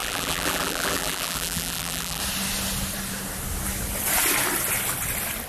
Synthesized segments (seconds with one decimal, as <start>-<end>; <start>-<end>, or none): 0.0-2.2